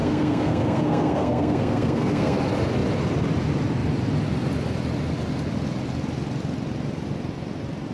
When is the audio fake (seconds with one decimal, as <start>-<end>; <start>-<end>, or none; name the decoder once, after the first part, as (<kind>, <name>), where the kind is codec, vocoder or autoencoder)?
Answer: 0.0-2.4 (codec, SNAC)